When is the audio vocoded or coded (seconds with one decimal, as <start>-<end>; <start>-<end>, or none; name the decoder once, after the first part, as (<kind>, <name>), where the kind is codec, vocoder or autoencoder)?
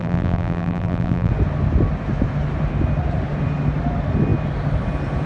0.0-1.3 (vocoder, BigVGAN v2)